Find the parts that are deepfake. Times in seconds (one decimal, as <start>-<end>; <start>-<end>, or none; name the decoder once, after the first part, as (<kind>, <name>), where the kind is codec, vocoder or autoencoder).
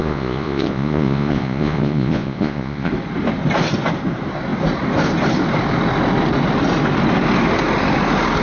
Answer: 0.0-2.9 (vocoder, Vocos)